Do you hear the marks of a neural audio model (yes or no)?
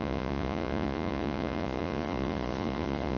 yes